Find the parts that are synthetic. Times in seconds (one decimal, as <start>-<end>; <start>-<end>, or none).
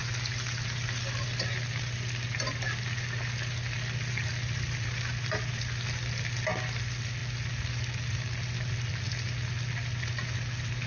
none